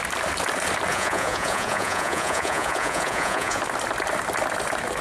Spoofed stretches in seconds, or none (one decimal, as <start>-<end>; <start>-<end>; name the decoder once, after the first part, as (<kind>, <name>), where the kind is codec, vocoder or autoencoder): 0.9-3.6 (vocoder, Vocos)